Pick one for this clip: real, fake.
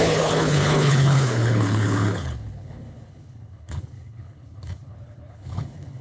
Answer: fake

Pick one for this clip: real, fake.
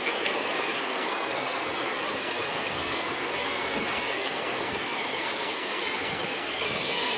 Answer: fake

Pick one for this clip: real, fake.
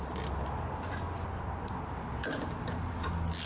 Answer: real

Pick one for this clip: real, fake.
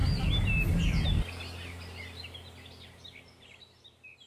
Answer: real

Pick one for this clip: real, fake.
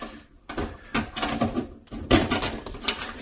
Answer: real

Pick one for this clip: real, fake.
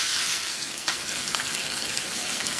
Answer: fake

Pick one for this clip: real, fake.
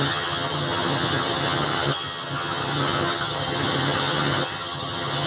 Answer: fake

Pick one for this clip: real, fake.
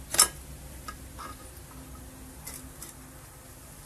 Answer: real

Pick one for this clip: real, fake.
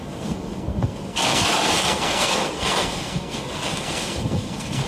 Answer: fake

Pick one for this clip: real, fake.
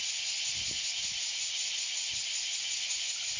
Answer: real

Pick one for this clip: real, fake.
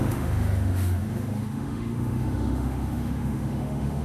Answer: fake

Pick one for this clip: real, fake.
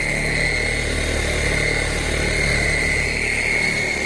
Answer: real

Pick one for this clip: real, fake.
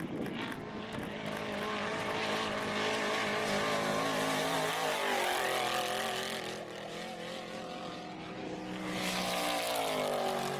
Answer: real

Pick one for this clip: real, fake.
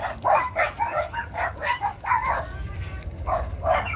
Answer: fake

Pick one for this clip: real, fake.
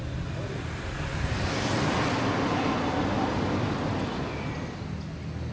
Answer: real